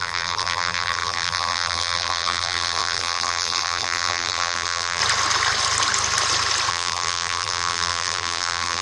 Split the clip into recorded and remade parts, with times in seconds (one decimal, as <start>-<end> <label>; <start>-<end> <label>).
0.0-5.0 remade; 5.0-6.7 recorded; 6.7-8.8 remade